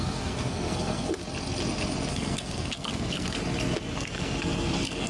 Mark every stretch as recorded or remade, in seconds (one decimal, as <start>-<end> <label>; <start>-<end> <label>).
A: 0.0-1.2 remade; 1.2-2.1 recorded; 2.1-3.4 remade; 3.4-3.9 recorded; 3.9-5.1 remade